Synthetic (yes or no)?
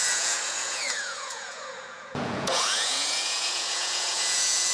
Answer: yes